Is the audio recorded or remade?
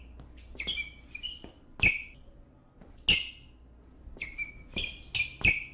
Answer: recorded